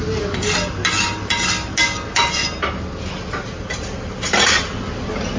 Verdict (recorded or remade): recorded